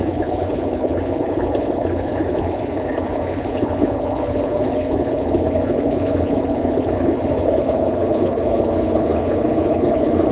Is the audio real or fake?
fake